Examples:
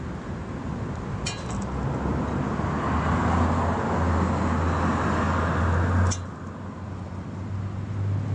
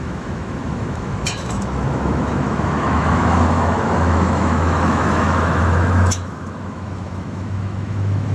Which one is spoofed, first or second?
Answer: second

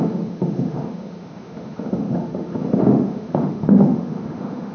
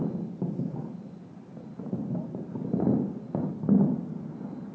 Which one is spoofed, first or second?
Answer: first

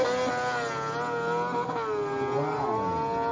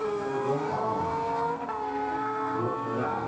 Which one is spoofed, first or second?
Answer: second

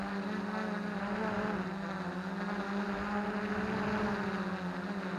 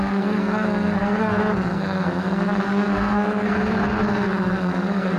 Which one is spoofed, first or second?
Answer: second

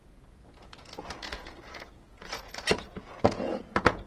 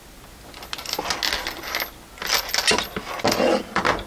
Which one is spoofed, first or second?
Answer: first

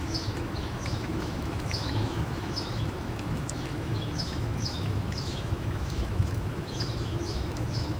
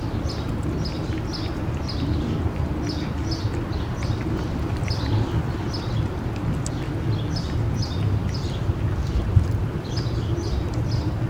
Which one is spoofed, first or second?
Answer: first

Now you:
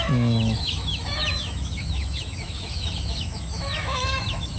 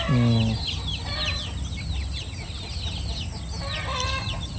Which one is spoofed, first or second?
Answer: first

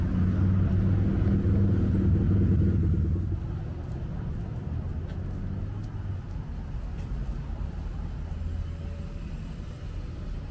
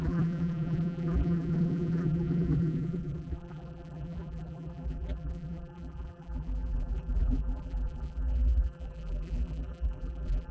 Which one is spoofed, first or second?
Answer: second